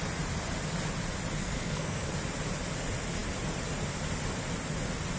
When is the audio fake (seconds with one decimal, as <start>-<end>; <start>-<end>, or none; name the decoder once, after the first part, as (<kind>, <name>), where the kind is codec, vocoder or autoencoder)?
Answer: 1.4-2.1 (codec, SNAC)